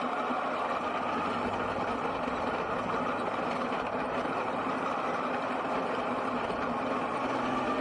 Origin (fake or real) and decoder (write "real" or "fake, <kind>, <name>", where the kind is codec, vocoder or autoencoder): real